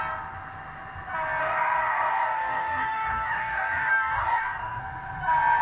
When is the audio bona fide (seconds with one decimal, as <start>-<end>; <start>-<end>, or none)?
0.0-1.4; 4.8-5.6